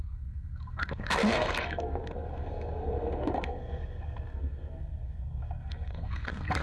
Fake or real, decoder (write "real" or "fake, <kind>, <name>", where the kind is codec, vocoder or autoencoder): fake, codec, SNAC